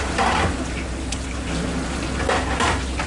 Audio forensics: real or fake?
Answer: real